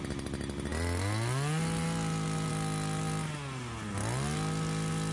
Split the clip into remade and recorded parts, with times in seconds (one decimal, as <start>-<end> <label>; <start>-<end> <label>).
0.0-5.1 recorded

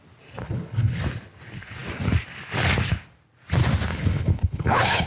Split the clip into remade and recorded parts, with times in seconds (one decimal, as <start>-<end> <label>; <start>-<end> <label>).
0.0-0.4 recorded; 0.4-1.0 remade; 1.0-3.9 recorded; 3.9-5.1 remade

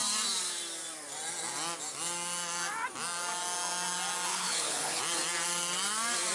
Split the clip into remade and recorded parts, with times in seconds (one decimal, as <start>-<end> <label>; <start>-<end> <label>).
0.0-4.3 recorded; 4.3-5.0 remade; 5.0-6.3 recorded

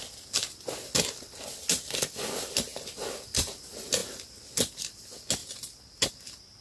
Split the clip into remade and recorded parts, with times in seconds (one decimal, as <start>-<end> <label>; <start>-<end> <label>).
0.0-6.6 recorded